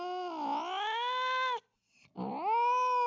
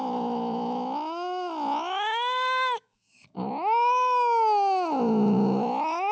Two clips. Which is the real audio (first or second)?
first